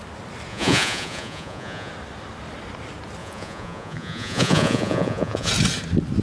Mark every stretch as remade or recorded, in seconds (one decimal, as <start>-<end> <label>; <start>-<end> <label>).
0.0-0.5 recorded; 0.5-1.9 remade; 1.9-3.2 recorded; 3.2-5.5 remade; 5.5-6.2 recorded